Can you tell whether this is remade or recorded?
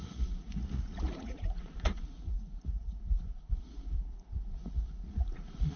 remade